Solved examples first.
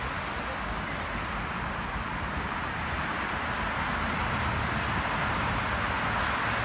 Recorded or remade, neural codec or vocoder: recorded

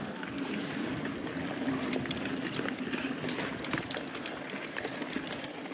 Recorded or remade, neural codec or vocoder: recorded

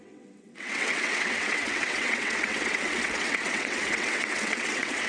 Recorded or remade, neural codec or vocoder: remade, vocoder, WaveNeXt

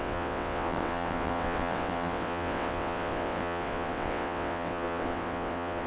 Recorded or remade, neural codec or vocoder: remade, vocoder, WaveNeXt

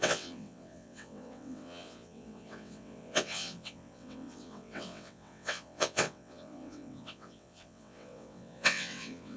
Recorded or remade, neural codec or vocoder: remade, vocoder, WaveNeXt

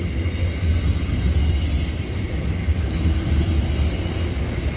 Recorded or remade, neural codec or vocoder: recorded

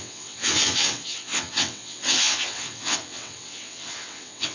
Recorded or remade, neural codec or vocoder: remade, vocoder, WaveNeXt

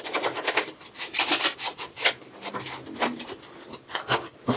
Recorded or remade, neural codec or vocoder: recorded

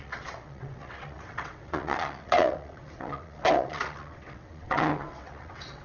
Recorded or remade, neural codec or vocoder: remade, vocoder, WaveNeXt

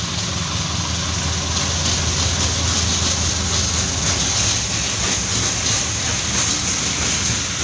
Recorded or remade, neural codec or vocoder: recorded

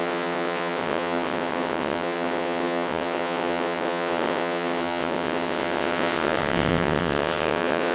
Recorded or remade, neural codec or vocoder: remade, vocoder, WaveNeXt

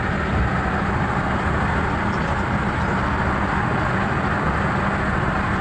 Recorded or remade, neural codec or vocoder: recorded